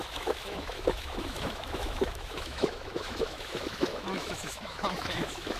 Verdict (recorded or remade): remade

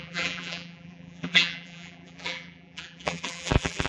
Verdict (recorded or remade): remade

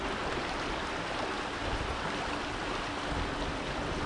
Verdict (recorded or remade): recorded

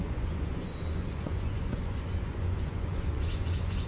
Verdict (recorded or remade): remade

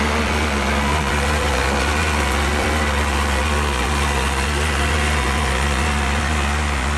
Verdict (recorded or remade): remade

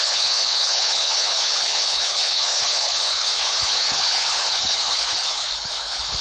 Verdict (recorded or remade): remade